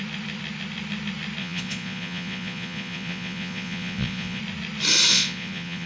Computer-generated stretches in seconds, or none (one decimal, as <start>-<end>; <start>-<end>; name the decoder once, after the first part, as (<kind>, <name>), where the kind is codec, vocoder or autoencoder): 1.4-4.4 (vocoder, Vocos); 5.1-5.9